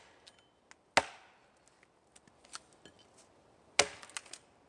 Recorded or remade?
recorded